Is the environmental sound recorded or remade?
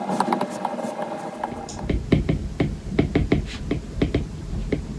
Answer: recorded